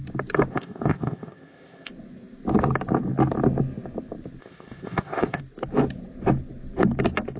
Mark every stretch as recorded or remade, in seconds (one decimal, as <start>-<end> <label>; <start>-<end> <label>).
0.0-0.5 recorded; 0.5-1.9 remade; 1.9-4.4 recorded; 4.4-5.4 remade; 5.4-7.4 recorded